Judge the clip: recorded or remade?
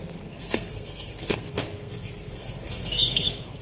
remade